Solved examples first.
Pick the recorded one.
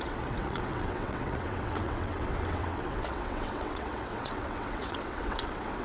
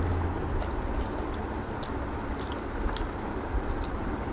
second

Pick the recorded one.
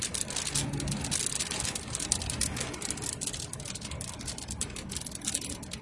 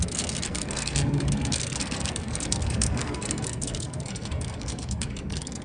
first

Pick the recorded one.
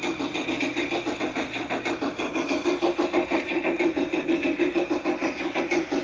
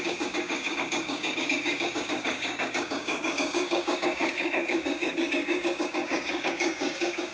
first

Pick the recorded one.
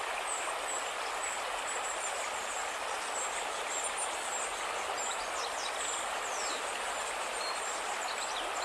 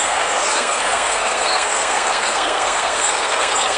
first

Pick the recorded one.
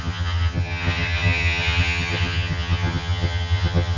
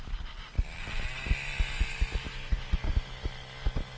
second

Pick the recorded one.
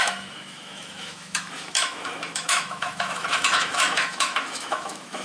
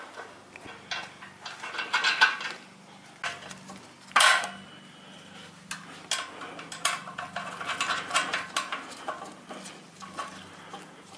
second